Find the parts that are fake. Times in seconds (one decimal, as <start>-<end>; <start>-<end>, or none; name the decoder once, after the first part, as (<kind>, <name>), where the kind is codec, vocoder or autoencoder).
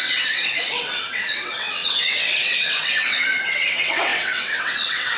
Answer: 0.0-5.2 (vocoder, WaveNeXt)